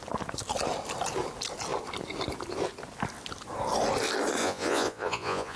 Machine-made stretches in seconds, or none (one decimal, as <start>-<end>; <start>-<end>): 4.4-5.6